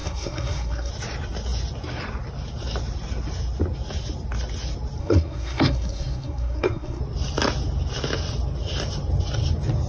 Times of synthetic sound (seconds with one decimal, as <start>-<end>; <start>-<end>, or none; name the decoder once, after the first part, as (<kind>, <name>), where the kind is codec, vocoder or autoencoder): 0.0-0.9 (codec, SNAC); 5.0-7.0